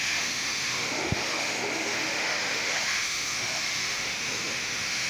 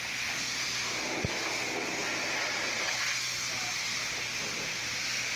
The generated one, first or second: first